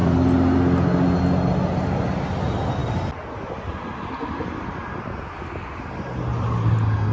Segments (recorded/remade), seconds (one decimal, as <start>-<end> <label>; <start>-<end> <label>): 0.0-7.1 recorded